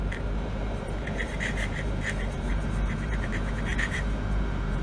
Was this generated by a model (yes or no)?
yes